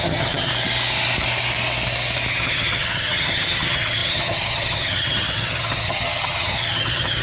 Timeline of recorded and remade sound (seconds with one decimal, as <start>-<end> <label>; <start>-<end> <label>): 0.0-0.5 remade; 0.5-2.3 recorded; 2.3-7.2 remade